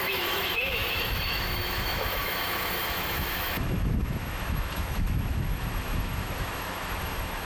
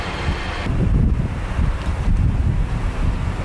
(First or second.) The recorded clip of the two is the second